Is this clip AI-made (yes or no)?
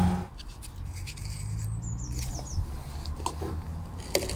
no